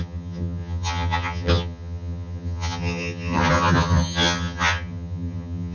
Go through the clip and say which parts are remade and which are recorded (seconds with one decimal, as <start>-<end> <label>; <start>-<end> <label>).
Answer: 0.0-5.7 remade